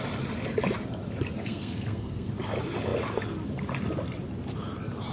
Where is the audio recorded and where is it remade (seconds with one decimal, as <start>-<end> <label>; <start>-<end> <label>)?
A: 0.0-1.4 recorded; 1.4-2.3 remade; 2.3-5.1 recorded